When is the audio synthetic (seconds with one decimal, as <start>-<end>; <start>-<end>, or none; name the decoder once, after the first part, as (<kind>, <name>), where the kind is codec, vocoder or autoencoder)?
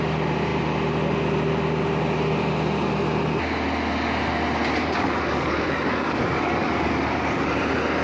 4.8-7.5 (codec, DAC)